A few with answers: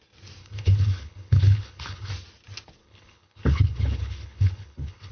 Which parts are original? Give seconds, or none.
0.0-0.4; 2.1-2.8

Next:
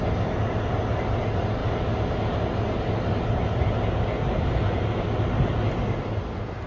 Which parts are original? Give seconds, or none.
0.0-6.7

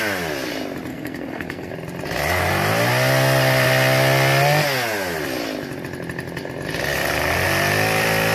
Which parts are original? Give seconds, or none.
0.0-0.9; 1.7-8.3

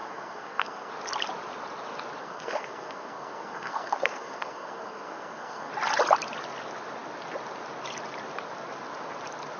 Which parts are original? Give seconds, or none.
0.9-2.2; 5.7-9.6

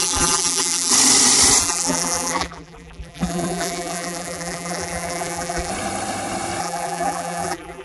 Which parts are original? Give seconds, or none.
0.9-1.6; 5.7-6.6

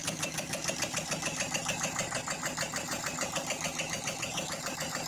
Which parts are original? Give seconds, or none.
0.0-5.1